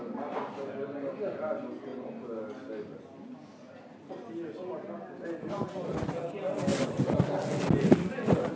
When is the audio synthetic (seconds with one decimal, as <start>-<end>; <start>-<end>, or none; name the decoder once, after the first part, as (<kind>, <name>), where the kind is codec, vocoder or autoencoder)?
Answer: none